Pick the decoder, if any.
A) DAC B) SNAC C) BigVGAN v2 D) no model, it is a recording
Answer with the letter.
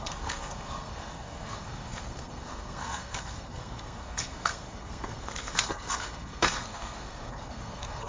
B